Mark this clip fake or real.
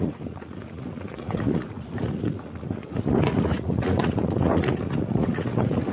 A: fake